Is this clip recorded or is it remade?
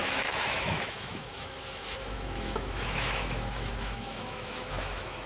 remade